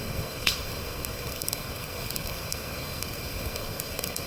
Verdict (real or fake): fake